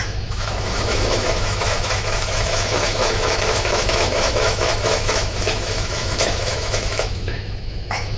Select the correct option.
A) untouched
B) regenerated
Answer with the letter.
B